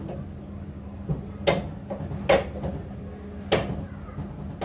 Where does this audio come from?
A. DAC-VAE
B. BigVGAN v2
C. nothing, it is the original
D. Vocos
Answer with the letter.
C